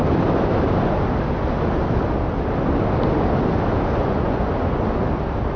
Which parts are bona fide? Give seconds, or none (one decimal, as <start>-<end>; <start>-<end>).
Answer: 0.0-4.0; 4.5-5.6